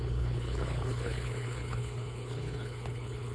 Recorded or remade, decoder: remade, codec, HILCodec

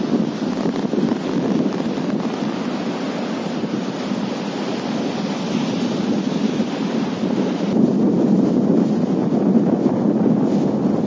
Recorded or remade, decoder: recorded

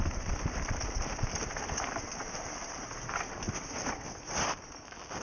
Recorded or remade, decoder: recorded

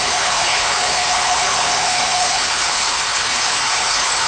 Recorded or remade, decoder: remade, codec, HILCodec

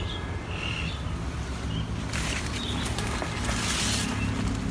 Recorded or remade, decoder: recorded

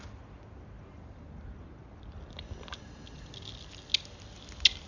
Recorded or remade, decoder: recorded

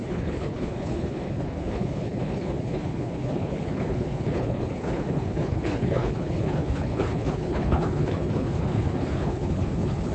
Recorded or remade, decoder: remade, codec, HILCodec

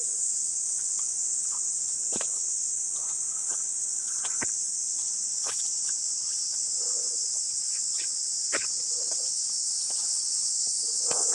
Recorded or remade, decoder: remade, codec, HILCodec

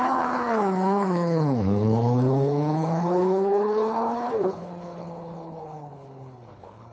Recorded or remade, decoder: remade, codec, HILCodec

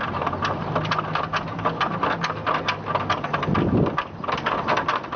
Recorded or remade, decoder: recorded